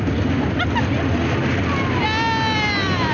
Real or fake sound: real